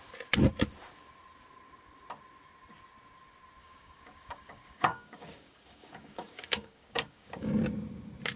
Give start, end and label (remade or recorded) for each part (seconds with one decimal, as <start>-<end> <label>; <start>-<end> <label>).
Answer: 0.0-3.6 recorded; 3.6-7.5 remade; 7.5-8.4 recorded